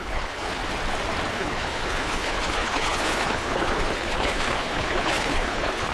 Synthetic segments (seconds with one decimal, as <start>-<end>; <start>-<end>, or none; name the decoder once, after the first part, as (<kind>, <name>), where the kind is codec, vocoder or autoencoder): 0.0-0.6 (codec, HILCodec); 1.3-5.9